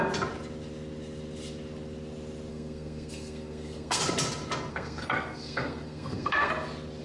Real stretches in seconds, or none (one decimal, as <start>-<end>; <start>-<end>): 0.0-2.5; 4.0-4.7; 6.5-7.0